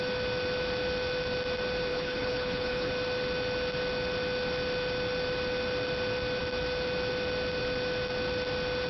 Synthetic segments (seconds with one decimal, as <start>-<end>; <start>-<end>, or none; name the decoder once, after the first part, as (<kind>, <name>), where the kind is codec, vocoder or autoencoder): 1.9-2.9 (codec, HILCodec)